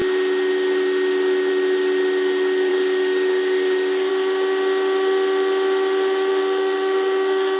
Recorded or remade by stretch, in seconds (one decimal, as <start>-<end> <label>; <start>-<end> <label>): 0.0-2.7 recorded; 2.7-4.1 remade; 4.1-6.3 recorded; 6.3-7.6 remade